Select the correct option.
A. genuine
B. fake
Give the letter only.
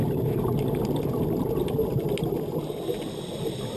A